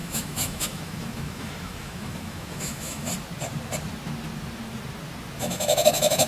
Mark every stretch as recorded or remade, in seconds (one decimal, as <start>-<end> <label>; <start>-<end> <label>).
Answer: 0.0-3.1 remade; 3.1-5.4 recorded; 5.4-6.3 remade